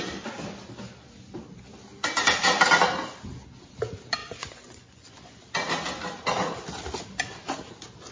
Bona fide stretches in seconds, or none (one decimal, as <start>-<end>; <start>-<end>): 0.0-4.2; 5.4-8.1